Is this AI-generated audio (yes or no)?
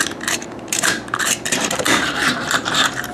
yes